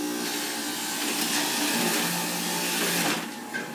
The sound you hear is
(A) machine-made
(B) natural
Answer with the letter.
B